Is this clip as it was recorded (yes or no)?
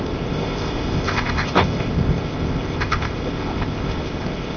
no